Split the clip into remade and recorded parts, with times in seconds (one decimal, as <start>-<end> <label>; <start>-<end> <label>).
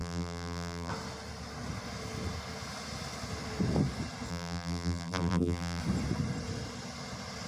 0.0-0.9 remade; 0.9-4.3 recorded; 4.3-5.8 remade; 5.8-7.5 recorded